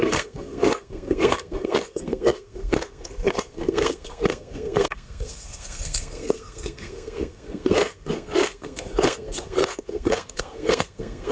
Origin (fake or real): fake